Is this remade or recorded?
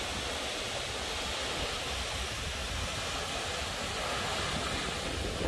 recorded